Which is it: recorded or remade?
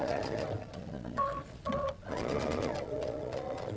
remade